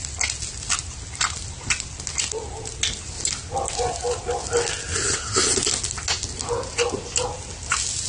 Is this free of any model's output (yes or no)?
yes